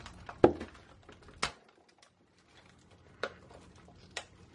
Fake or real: real